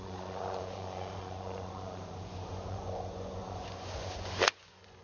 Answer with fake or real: fake